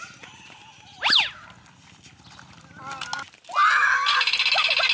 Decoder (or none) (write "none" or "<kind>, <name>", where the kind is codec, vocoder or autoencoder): none